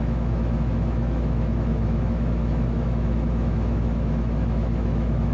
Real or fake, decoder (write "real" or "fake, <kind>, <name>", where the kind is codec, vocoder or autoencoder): fake, autoencoder, DAC-VAE